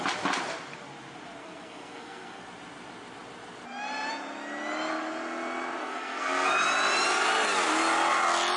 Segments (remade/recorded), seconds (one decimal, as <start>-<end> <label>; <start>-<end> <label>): 0.0-1.4 recorded; 1.4-2.4 remade; 2.4-5.8 recorded; 5.8-6.5 remade; 6.5-8.6 recorded